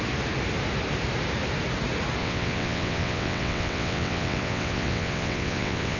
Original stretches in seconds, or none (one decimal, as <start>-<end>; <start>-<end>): 0.0-2.2